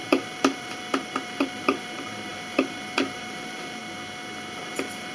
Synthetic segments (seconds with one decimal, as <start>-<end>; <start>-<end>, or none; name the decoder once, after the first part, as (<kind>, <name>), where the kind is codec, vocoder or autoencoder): 0.0-3.8 (vocoder, BigVGAN v2); 4.5-5.1